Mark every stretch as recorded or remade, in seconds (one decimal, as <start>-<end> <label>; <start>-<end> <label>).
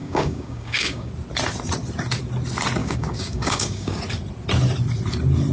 0.0-1.1 remade; 1.1-2.8 recorded; 2.8-4.0 remade; 4.0-5.5 recorded